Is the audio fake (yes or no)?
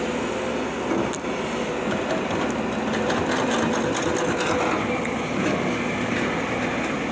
no